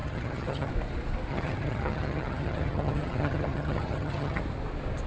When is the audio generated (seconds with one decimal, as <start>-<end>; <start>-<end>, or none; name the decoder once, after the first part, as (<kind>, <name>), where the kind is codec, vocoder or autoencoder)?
0.0-0.7 (vocoder, HiFi-GAN); 1.3-4.4